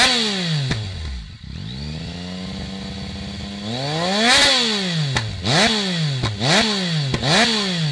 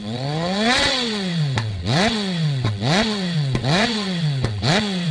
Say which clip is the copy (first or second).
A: second